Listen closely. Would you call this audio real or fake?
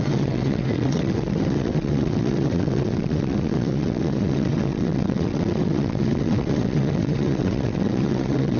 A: fake